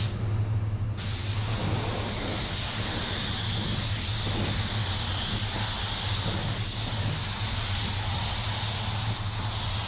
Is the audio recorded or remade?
recorded